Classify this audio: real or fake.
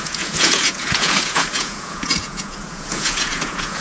fake